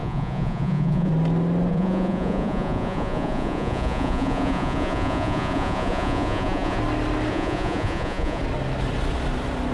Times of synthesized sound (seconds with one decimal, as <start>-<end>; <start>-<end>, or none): 0.0-1.1; 1.7-6.8; 7.3-8.4